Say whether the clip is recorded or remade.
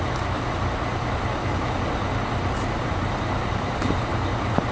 recorded